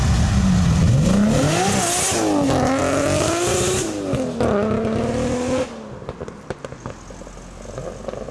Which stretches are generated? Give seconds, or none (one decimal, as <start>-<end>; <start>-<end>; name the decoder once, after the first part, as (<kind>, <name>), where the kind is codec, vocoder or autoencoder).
none